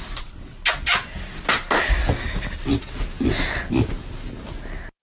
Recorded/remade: recorded